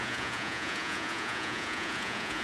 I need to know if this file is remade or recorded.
remade